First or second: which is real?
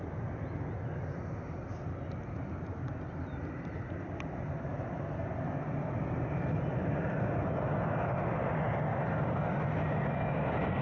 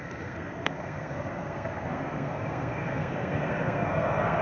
first